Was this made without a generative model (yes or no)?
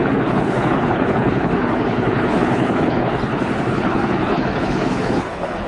no